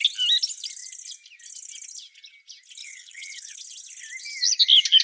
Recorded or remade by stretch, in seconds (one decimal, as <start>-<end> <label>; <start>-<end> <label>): 0.0-2.8 recorded; 2.8-3.6 remade; 3.6-5.0 recorded